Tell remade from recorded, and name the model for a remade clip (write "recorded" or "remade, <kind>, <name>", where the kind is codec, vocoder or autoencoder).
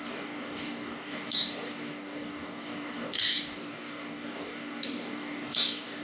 remade, codec, DAC